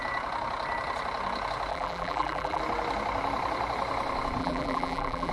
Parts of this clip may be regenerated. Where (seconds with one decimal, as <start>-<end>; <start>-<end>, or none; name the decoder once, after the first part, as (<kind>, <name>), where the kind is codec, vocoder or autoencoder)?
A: 1.7-2.6 (vocoder, BigVGAN v2); 4.4-5.3